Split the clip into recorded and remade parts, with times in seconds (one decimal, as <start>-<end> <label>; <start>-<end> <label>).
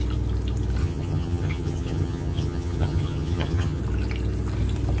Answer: 0.0-0.8 recorded; 0.8-3.8 remade; 3.8-5.0 recorded